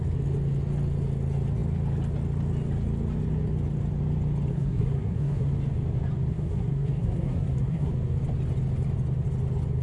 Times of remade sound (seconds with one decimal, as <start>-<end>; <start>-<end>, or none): 4.5-5.5; 6.3-7.9